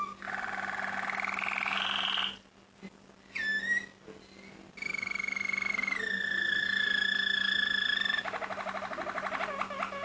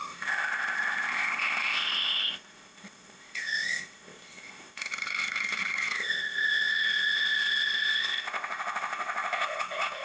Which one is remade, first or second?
second